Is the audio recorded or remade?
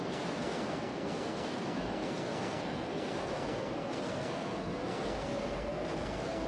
remade